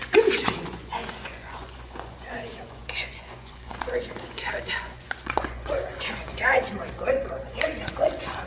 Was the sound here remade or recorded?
remade